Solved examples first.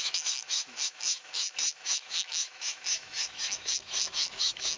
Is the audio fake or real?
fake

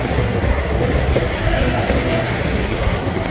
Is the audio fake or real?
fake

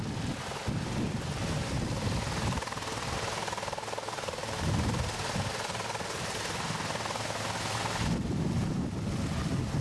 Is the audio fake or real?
real